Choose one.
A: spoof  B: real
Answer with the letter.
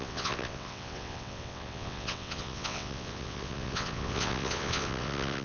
A